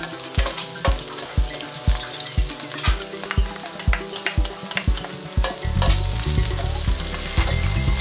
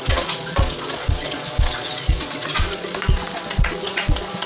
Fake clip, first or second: second